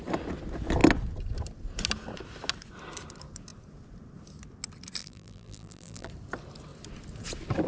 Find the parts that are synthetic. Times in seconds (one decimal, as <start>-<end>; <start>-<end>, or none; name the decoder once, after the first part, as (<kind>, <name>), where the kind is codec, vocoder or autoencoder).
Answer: 5.0-6.1 (vocoder, BigVGAN v2)